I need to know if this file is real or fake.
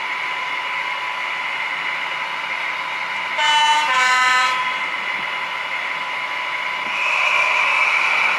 real